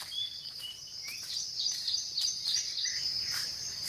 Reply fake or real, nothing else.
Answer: fake